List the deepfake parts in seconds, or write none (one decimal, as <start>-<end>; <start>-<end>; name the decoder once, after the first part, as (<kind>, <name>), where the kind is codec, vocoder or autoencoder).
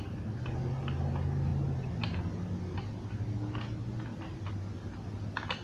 none